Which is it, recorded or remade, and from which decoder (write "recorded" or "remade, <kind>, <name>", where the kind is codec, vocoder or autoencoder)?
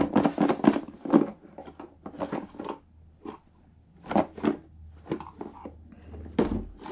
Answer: recorded